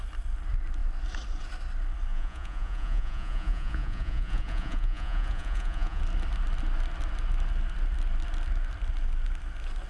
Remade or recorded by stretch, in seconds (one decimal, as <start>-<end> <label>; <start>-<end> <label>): 0.0-2.1 recorded; 2.1-6.0 remade; 6.0-9.9 recorded